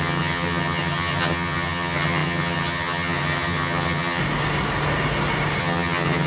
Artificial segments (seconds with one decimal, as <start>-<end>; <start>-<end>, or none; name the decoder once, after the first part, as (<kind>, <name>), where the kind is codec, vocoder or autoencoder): 0.0-4.2 (vocoder, HiFi-GAN); 5.6-6.3